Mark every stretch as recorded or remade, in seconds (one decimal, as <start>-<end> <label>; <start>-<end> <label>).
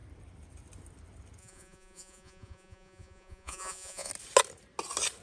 0.0-1.4 recorded; 1.4-4.1 remade; 4.1-5.2 recorded